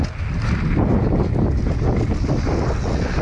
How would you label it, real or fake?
real